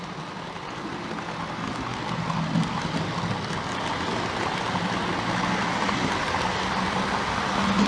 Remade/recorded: recorded